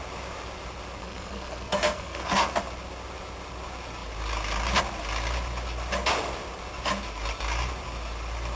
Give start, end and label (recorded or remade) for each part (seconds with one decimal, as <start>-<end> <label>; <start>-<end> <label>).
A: 0.0-1.0 recorded; 1.0-2.6 remade; 2.6-8.6 recorded

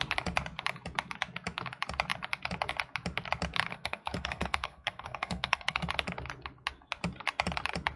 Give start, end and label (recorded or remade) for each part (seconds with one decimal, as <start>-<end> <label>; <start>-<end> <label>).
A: 0.0-3.7 recorded; 3.7-5.9 remade; 5.9-8.0 recorded

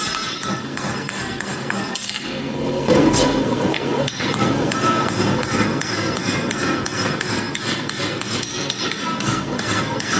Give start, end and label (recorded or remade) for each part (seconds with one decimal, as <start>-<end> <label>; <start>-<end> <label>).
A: 0.0-10.2 remade

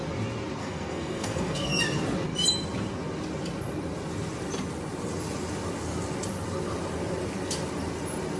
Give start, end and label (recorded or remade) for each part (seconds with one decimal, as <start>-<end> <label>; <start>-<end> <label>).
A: 0.0-0.6 recorded; 0.6-1.8 remade; 1.8-8.4 recorded